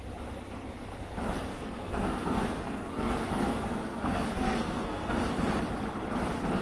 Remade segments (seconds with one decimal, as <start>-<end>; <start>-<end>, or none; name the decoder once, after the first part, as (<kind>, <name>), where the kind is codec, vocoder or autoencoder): 1.5-5.2 (codec, SNAC)